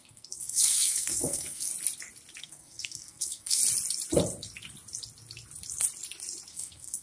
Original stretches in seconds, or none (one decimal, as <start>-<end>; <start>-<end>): 1.7-2.4; 3.6-6.5